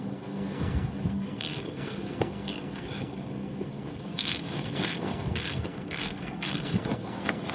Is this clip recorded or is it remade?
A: remade